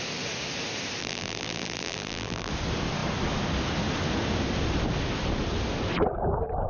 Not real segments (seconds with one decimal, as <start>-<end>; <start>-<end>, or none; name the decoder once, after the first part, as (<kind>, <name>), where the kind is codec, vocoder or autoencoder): 1.0-2.5 (vocoder, BigVGAN v2)